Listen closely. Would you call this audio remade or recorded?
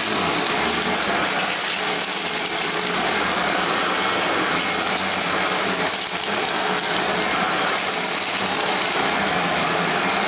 recorded